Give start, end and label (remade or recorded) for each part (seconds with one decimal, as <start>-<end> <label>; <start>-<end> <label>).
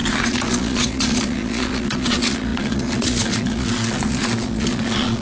0.0-5.2 remade